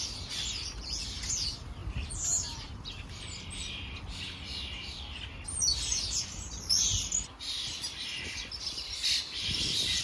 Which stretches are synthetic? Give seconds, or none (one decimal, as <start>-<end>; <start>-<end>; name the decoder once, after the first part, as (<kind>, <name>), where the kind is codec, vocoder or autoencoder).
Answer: 1.8-4.2 (vocoder, BigVGAN v2); 5.6-10.0